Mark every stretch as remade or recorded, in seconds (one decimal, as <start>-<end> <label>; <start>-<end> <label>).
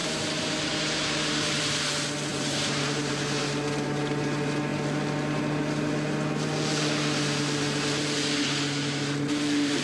0.0-1.6 remade; 1.6-2.3 recorded; 2.3-3.1 remade; 3.1-9.8 recorded